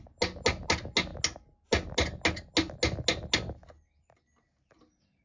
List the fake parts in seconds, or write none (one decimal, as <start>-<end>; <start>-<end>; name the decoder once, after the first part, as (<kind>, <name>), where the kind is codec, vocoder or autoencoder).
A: none